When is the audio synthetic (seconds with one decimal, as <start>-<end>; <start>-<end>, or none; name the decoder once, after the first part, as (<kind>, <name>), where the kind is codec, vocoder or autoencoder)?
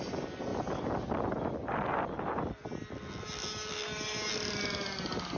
none